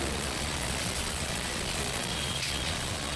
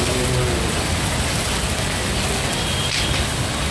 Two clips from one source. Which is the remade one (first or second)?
first